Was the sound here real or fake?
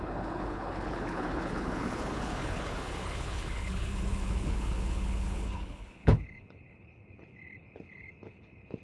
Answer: fake